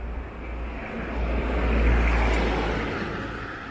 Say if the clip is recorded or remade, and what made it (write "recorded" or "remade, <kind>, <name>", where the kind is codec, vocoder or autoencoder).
recorded